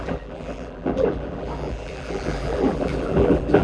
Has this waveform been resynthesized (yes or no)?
yes